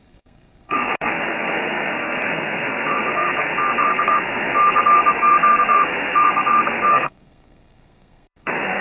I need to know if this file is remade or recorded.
remade